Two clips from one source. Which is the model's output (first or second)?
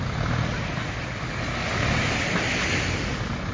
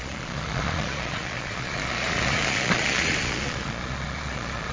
second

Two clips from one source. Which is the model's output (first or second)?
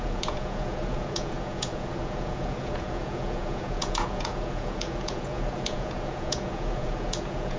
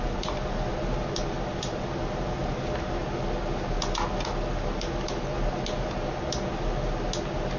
first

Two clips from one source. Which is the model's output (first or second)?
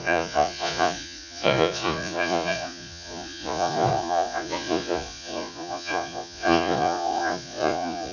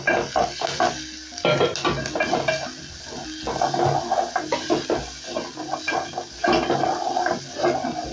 first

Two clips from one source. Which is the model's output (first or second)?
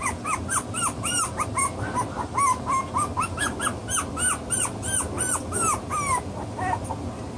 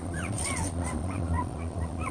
second